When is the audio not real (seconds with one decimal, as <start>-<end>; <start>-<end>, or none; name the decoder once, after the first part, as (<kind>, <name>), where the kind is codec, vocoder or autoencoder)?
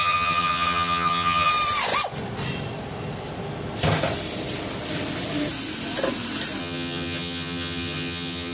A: 0.0-1.5 (vocoder, HiFi-GAN); 6.6-8.5